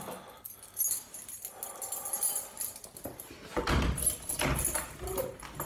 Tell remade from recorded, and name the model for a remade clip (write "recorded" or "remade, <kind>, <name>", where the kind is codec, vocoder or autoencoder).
recorded